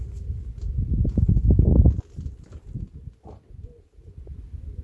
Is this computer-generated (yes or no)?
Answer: no